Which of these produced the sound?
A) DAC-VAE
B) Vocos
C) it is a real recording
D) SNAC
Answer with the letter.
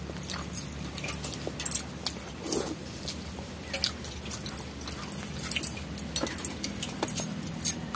C